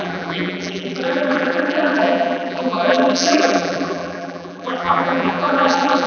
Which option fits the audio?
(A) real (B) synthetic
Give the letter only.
B